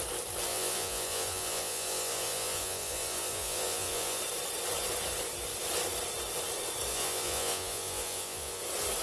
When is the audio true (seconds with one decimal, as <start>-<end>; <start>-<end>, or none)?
0.0-0.5; 4.2-6.9; 8.6-9.0